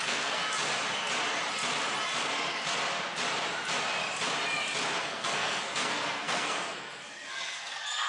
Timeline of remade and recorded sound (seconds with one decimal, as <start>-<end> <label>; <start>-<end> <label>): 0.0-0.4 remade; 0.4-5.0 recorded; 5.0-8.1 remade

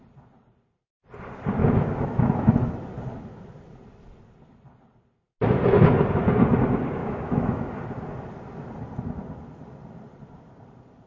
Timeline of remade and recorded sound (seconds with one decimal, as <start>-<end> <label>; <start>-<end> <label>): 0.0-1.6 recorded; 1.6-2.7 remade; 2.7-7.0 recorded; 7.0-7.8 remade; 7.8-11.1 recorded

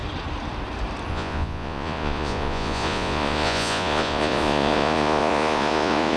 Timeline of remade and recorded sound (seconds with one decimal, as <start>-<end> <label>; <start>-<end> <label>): 0.0-1.1 recorded; 1.1-6.2 remade

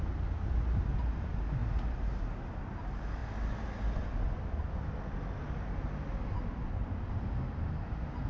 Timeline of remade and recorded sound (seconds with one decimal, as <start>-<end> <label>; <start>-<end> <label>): 0.0-8.3 recorded

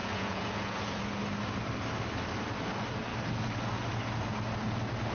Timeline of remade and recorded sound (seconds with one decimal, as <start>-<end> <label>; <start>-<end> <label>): 0.0-1.0 remade; 1.0-5.1 recorded

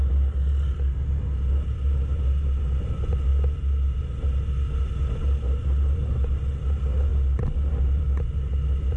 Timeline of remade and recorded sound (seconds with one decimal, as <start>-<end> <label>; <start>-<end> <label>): 0.0-9.0 recorded